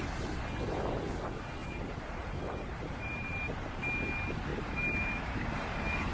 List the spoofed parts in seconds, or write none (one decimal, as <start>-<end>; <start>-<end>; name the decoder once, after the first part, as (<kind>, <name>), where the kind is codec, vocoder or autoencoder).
1.6-3.7 (vocoder, BigVGAN v2); 4.5-6.1